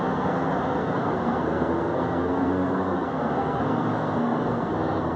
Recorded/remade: remade